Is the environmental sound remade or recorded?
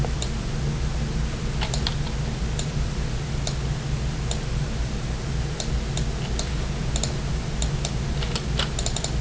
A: recorded